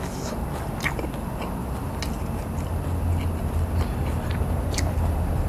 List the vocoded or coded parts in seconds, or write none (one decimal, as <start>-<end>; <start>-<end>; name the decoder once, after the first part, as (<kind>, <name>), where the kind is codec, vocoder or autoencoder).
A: none